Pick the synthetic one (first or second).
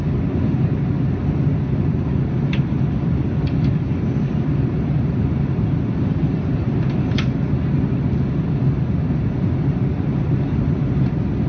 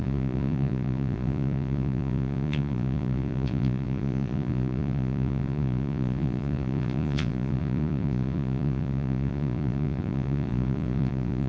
second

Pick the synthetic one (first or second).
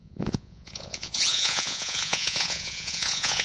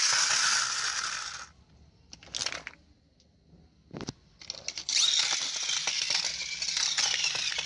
first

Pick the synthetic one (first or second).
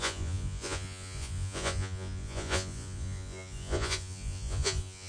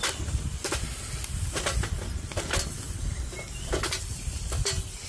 first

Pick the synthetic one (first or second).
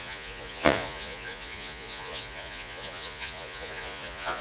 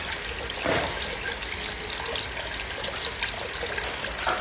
first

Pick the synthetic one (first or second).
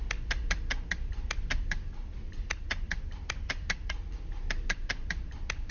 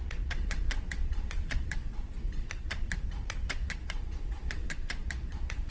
second